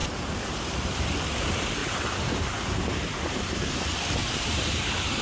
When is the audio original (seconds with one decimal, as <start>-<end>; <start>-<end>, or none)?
1.0-1.8; 3.8-4.2